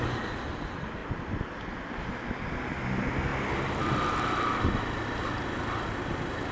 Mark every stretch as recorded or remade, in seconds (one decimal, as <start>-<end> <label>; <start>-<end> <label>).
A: 0.0-6.5 recorded